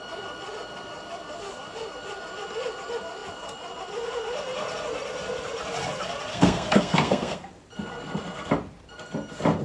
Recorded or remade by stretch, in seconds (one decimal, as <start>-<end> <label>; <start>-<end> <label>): 0.0-6.3 recorded; 6.3-7.5 remade; 7.5-9.6 recorded